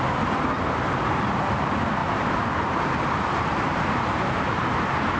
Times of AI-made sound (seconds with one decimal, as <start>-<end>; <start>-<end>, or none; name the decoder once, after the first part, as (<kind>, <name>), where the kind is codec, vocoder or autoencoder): 2.0-5.2 (vocoder, BigVGAN v2)